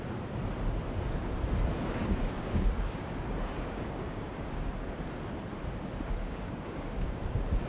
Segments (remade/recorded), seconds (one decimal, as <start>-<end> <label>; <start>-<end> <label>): 0.0-2.0 recorded; 2.0-4.7 remade; 4.7-6.2 recorded; 6.2-7.7 remade